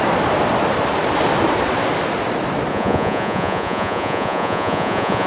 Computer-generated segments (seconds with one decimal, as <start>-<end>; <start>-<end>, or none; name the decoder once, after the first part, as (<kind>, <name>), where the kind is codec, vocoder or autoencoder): 2.7-5.3 (vocoder, Vocos)